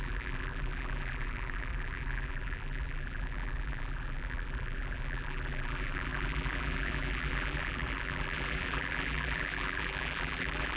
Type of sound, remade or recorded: remade